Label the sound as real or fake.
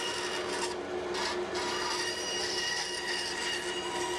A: real